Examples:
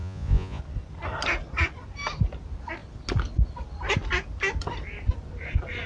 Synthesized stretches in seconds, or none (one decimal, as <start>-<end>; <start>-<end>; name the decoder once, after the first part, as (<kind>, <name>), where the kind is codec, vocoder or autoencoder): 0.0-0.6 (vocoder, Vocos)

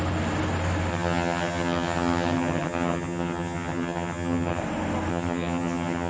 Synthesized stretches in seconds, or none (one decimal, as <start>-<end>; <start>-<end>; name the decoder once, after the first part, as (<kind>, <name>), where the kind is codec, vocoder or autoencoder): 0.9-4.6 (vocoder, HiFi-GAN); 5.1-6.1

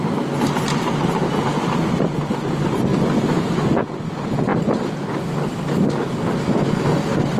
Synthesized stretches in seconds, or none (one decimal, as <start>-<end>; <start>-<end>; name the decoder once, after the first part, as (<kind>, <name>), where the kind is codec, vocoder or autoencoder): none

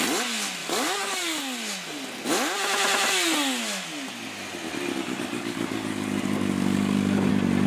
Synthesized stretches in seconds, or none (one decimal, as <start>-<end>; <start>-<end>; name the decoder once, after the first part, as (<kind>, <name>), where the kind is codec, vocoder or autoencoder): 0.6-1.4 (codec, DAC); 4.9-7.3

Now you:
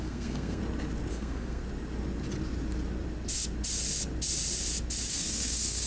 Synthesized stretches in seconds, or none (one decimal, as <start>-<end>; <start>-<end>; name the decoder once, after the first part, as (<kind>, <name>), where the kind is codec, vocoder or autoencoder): 0.0-0.6 (codec, SNAC); 1.1-1.6; 5.1-5.9

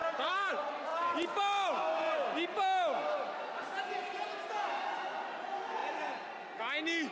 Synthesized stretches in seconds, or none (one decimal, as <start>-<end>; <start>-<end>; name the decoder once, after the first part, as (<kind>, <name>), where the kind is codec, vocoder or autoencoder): 0.0-0.5 (vocoder, BigVGAN v2)